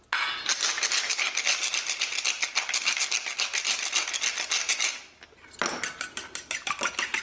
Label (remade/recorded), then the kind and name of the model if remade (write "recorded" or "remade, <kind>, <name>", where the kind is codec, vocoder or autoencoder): recorded